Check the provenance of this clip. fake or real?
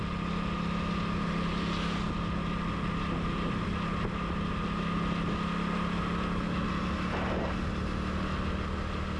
real